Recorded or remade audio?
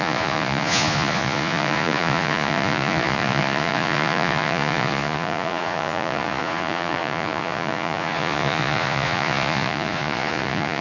remade